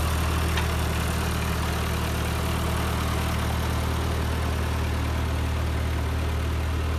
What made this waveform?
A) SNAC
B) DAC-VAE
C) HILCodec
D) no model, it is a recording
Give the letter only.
D